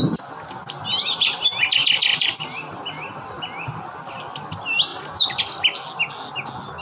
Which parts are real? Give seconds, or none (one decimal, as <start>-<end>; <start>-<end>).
0.0-0.9; 1.6-2.1; 2.7-4.9; 5.4-6.8